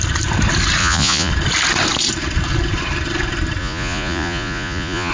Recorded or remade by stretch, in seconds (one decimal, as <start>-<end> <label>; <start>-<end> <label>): 0.0-0.8 recorded; 0.8-1.3 remade; 1.3-3.6 recorded; 3.6-5.1 remade